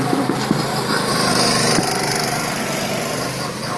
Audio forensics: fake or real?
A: real